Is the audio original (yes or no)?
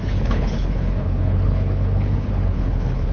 no